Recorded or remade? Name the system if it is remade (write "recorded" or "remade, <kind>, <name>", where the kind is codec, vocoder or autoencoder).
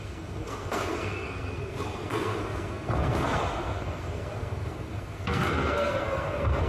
remade, codec, SNAC